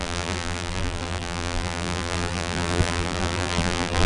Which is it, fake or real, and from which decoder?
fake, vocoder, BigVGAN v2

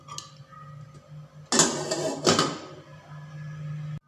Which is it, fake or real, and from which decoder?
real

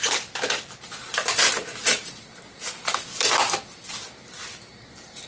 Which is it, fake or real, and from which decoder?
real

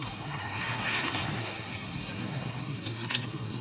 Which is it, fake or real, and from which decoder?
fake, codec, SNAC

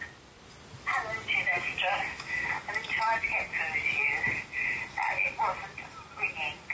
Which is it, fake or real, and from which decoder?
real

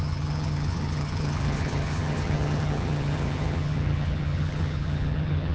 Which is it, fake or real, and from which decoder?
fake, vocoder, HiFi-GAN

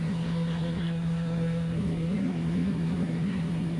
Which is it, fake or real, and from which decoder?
fake, codec, SNAC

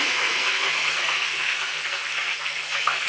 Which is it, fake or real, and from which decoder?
fake, codec, SNAC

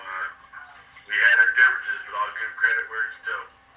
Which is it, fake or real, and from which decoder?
real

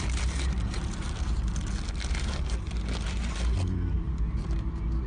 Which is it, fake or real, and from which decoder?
real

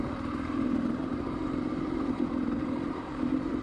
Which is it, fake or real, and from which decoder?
fake, vocoder, BigVGAN v2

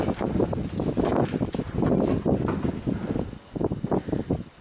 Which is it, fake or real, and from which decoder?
real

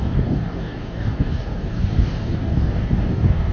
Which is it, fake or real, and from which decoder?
fake, codec, DAC